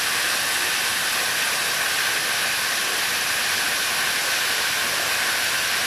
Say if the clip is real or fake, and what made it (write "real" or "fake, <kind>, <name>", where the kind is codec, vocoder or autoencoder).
real